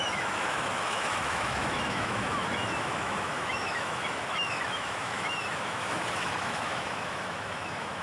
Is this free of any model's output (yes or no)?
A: no